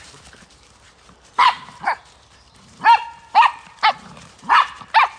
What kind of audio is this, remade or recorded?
remade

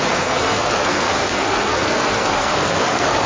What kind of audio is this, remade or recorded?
remade